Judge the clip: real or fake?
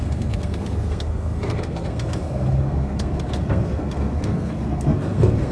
fake